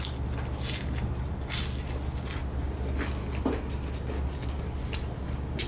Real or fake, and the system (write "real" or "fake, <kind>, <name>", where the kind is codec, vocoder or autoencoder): real